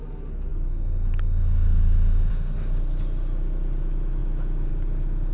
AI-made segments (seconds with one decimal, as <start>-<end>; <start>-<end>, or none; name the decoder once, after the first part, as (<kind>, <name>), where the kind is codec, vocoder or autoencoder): none